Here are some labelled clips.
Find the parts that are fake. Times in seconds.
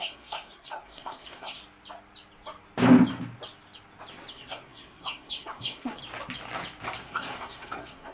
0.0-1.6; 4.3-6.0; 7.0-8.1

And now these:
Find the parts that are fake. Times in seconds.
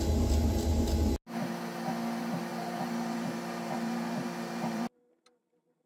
2.5-5.1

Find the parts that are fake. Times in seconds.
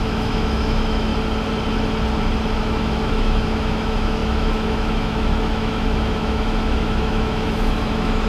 0.0-1.1; 2.6-8.3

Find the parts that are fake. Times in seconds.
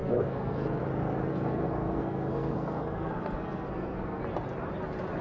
0.0-0.8; 1.3-4.2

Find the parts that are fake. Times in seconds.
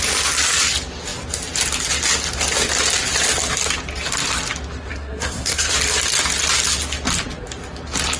4.9-5.7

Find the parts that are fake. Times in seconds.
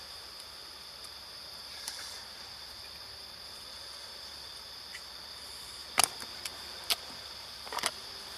0.6-2.5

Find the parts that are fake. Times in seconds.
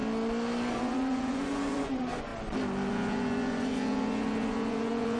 0.7-2.3; 2.9-5.2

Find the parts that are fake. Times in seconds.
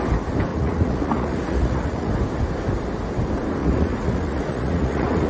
0.5-2.1; 3.6-5.3